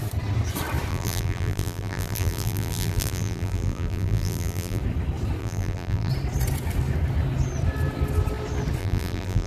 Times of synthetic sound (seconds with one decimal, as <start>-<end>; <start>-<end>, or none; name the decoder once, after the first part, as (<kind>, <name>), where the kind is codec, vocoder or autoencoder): 0.9-4.8 (vocoder, BigVGAN v2); 5.4-6.1; 8.8-9.5